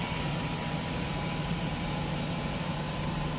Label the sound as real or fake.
real